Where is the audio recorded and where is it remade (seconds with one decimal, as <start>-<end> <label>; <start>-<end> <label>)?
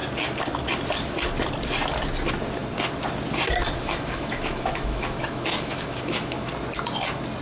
0.0-3.8 recorded; 3.8-6.5 remade; 6.5-7.4 recorded